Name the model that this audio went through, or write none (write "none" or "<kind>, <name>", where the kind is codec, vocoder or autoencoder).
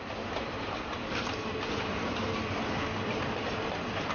none